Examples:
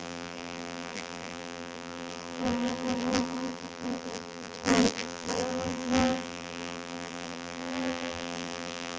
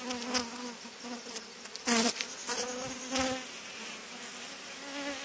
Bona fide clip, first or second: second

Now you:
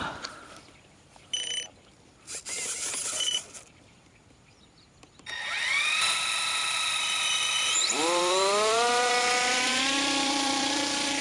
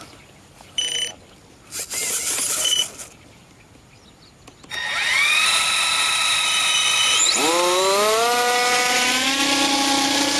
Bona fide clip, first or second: second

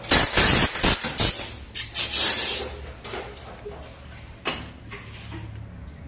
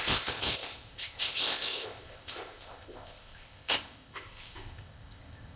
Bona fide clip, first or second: first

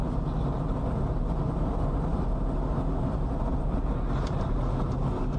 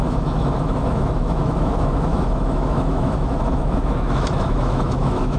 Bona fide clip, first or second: first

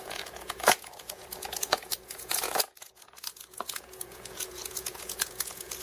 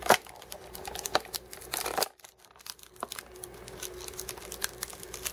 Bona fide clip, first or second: second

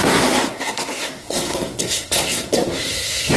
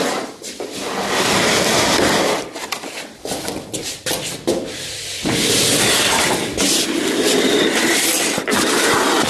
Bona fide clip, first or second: second